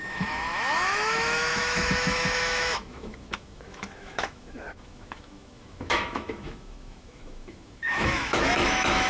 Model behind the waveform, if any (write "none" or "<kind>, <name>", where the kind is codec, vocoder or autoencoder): autoencoder, DAC-VAE